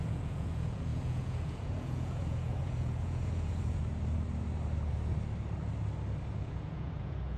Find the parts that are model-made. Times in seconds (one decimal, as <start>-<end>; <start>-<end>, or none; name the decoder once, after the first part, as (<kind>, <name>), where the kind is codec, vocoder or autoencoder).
0.0-3.8 (vocoder, Vocos); 6.3-7.4